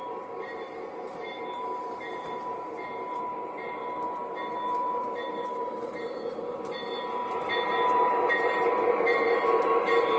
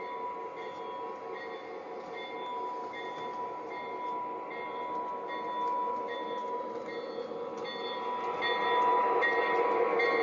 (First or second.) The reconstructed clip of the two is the first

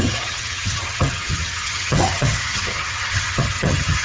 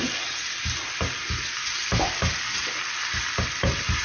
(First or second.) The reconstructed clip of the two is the first